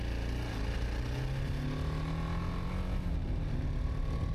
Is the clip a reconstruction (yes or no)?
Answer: no